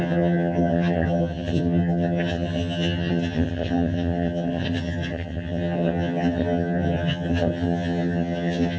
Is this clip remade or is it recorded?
remade